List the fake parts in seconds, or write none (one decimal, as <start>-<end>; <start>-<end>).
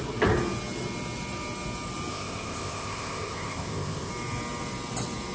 2.1-4.1